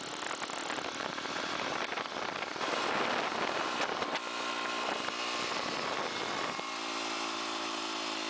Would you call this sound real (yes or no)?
yes